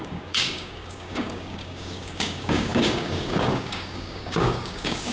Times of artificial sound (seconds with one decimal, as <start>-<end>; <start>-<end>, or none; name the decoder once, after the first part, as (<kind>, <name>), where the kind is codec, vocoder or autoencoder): 0.0-5.1 (codec, DAC)